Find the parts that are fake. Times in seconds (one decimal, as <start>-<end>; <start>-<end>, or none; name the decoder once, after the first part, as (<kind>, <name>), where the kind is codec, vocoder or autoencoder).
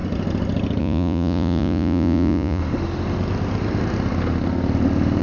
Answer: 0.8-2.6 (vocoder, Vocos)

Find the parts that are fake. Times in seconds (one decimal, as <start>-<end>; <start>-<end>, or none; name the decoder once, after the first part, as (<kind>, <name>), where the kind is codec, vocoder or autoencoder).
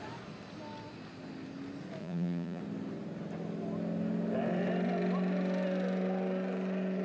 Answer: 2.0-2.6 (vocoder, Vocos)